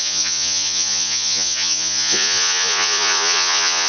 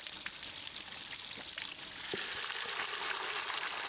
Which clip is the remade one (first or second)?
first